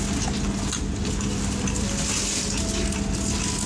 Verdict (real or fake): real